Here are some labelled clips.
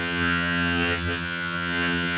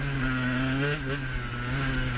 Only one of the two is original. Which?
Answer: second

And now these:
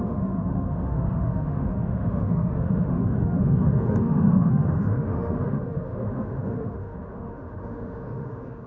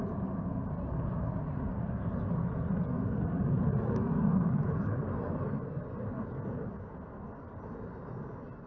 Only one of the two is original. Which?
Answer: second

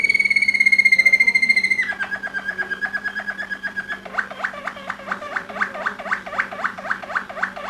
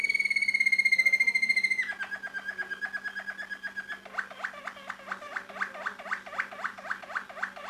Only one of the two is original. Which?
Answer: second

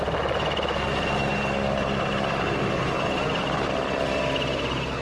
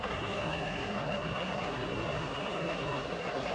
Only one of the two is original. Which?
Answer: first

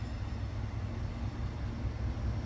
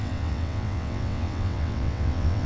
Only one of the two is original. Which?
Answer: first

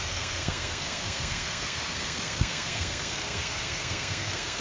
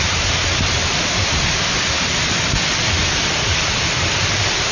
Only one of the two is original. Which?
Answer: second